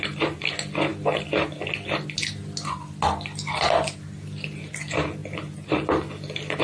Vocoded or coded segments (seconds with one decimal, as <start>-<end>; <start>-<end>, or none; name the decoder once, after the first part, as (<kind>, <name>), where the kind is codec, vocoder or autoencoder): none